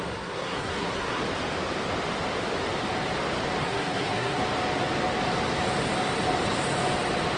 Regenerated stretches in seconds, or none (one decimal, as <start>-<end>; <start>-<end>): 0.0-1.2; 3.6-4.4